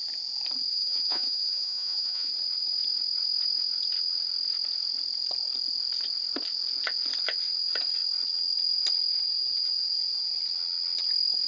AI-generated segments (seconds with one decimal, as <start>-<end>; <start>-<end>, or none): 0.7-2.3